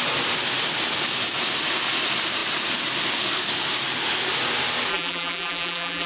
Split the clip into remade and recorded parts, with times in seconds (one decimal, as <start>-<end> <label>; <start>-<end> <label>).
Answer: 0.0-4.9 recorded; 4.9-6.1 remade